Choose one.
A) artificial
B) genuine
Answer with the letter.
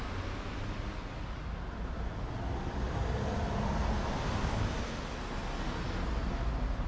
B